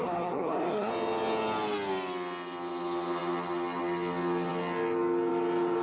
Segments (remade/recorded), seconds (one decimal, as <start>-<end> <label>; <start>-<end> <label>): 0.0-0.9 remade; 0.9-5.8 recorded